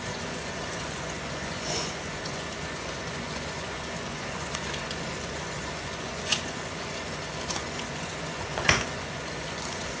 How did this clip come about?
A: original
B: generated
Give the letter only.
B